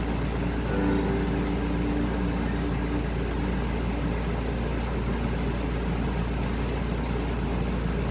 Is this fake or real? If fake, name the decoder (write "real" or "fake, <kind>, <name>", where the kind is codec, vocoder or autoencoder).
real